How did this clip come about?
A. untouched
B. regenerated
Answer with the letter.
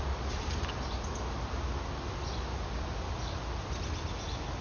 A